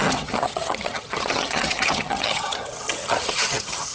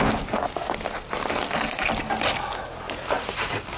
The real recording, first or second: second